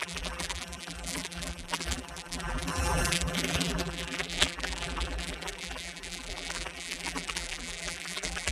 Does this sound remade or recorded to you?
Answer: remade